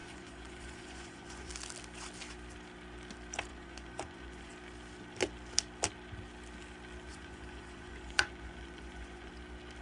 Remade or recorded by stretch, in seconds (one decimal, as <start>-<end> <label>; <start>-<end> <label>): 0.0-1.5 remade; 1.5-3.5 recorded; 3.5-4.5 remade; 4.5-7.1 recorded; 7.1-9.3 remade; 9.3-9.8 recorded